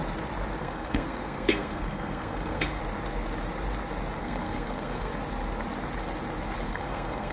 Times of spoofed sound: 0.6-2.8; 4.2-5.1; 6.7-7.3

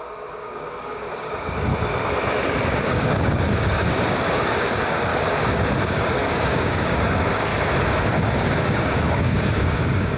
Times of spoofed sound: 0.0-1.7; 2.8-5.1; 5.8-7.5; 8.0-10.2

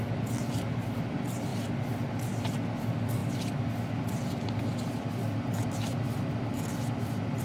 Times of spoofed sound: none

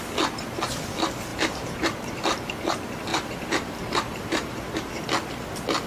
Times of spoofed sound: 1.3-2.5; 3.1-4.9

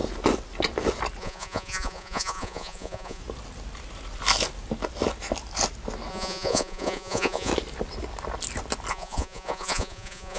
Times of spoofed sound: 1.2-3.2; 6.1-7.5; 8.9-10.4

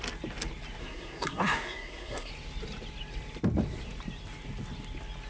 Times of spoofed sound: 0.8-2.3